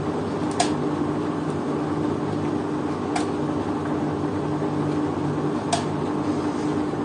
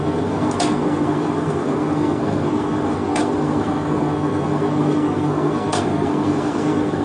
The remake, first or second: second